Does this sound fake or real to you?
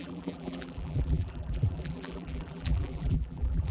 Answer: fake